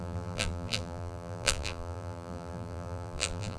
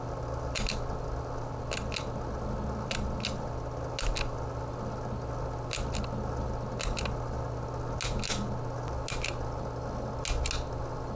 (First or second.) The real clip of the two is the second